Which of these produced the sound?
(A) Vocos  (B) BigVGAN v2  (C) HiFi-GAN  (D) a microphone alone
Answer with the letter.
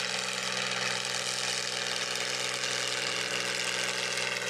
B